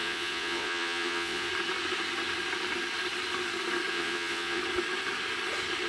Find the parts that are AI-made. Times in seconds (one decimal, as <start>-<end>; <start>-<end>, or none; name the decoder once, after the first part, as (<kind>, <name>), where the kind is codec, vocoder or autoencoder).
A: 0.0-1.5 (vocoder, Vocos); 3.9-4.6